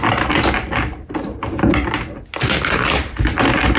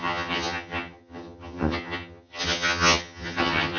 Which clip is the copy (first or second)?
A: second